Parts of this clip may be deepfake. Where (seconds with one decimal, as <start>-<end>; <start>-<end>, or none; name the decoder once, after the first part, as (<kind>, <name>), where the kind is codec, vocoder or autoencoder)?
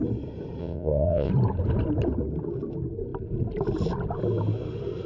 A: 0.6-1.3 (vocoder, WaveNeXt)